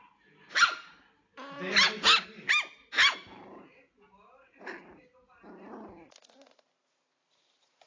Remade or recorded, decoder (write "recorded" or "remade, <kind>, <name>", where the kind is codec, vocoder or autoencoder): recorded